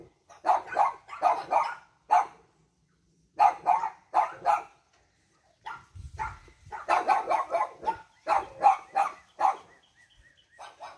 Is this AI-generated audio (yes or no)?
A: no